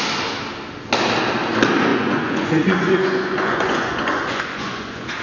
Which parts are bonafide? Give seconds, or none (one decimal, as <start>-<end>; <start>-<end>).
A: 0.0-1.9